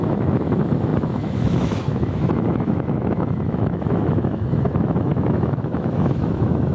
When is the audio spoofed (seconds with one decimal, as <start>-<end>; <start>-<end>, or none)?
0.0-6.7